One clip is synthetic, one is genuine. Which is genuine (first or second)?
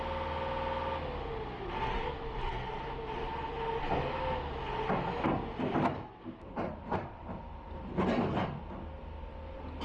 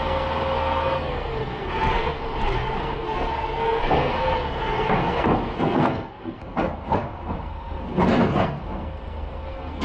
first